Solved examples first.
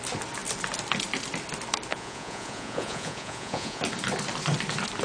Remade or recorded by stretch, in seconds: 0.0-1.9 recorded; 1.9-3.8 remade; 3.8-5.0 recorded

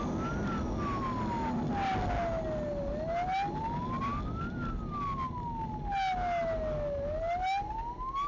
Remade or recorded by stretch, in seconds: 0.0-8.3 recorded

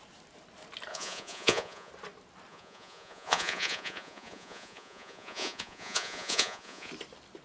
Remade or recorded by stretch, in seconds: 0.0-0.9 recorded; 0.9-1.9 remade; 1.9-2.5 recorded; 2.5-6.9 remade; 6.9-7.4 recorded

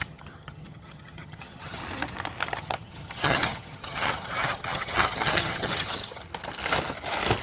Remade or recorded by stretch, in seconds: 0.0-1.8 remade; 1.8-2.5 recorded; 2.5-6.2 remade; 6.2-7.4 recorded

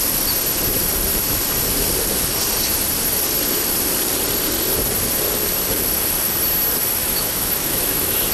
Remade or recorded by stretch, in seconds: 0.0-7.0 recorded; 7.0-8.3 remade

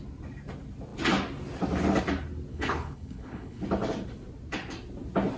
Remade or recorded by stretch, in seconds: 0.0-2.5 recorded; 2.5-3.6 remade; 3.6-5.4 recorded

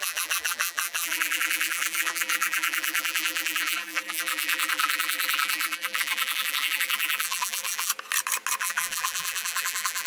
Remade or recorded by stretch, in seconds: 0.0-7.9 remade; 7.9-8.6 recorded; 8.6-10.1 remade